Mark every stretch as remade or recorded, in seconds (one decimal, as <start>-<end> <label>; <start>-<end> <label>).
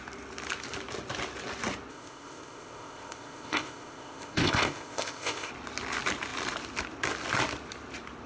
0.0-1.9 recorded; 1.9-5.5 remade; 5.5-8.3 recorded